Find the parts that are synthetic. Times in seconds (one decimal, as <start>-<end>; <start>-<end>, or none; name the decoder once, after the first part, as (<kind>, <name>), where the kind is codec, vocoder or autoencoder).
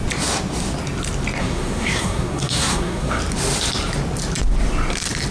1.4-3.2 (codec, SNAC)